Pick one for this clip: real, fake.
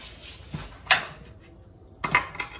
real